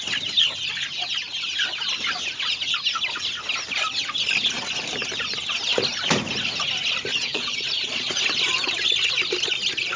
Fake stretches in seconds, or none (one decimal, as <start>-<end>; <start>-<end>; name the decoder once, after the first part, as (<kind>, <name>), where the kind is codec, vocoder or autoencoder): 7.1-8.2 (vocoder, Vocos)